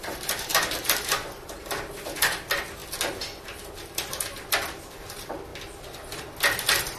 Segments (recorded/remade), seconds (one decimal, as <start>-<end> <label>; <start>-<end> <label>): 0.0-0.5 recorded; 0.5-1.1 remade; 1.1-7.0 recorded